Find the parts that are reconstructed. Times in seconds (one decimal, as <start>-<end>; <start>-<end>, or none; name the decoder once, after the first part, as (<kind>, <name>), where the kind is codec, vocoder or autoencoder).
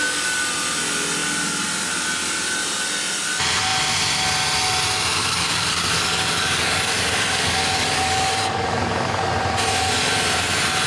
5.2-9.3 (codec, DAC)